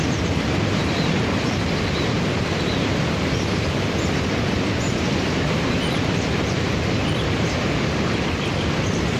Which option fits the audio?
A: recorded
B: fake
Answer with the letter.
A